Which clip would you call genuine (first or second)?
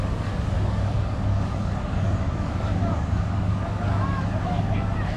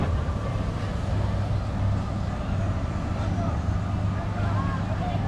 second